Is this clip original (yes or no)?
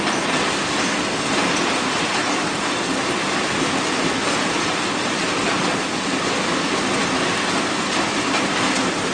yes